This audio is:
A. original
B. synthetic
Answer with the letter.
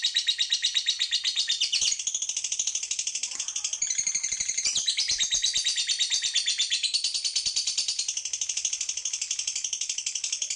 B